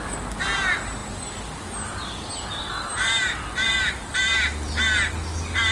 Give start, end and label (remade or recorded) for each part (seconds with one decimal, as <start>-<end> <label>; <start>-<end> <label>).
0.0-2.9 recorded; 2.9-4.2 remade; 4.2-5.7 recorded